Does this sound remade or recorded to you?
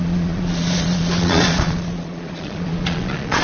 remade